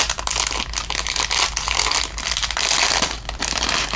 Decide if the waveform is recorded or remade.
recorded